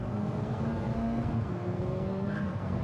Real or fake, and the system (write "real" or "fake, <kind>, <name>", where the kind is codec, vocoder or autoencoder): fake, codec, SNAC